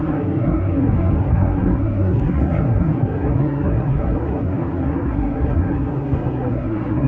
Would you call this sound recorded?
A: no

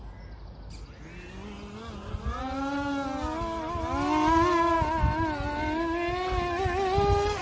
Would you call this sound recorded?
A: yes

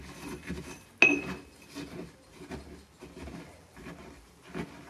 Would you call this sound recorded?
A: yes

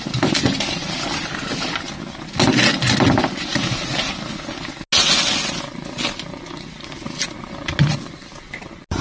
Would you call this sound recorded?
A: yes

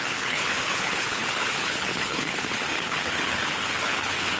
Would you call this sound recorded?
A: no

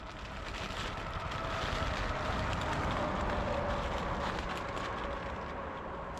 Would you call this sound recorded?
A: yes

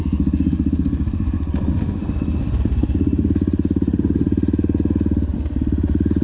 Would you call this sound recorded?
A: yes